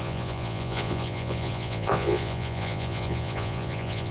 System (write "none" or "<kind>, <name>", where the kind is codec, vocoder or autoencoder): vocoder, Vocos